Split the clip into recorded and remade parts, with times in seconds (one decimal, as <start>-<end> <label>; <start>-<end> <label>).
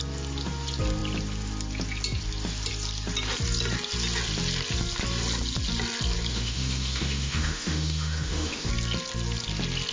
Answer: 0.0-6.3 recorded; 6.3-8.7 remade; 8.7-9.9 recorded